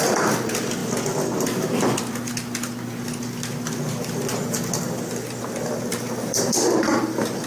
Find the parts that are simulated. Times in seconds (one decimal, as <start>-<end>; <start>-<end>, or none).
5.9-7.0